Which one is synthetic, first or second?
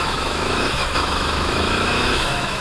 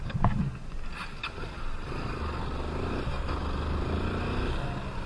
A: first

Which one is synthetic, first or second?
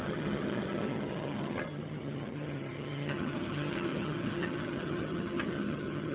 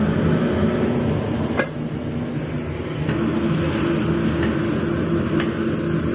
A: first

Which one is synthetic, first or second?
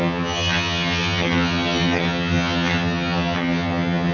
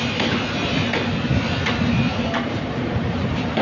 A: first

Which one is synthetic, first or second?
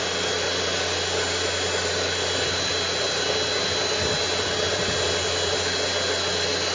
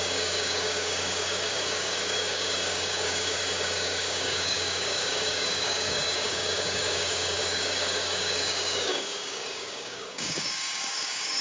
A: second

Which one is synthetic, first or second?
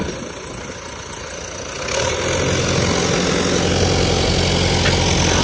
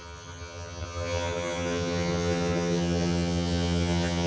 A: second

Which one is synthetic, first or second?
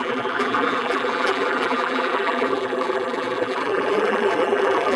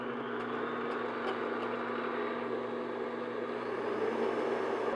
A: first